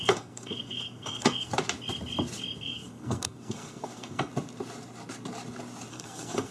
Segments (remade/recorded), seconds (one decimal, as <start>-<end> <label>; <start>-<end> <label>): 0.0-1.5 remade; 1.5-2.6 recorded; 2.6-4.3 remade; 4.3-5.9 recorded; 5.9-6.5 remade